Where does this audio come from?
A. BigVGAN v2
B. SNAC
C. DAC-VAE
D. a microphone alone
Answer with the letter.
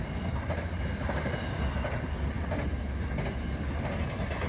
D